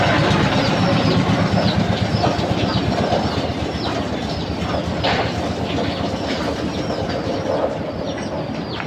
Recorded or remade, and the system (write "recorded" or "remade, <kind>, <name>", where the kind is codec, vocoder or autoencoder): recorded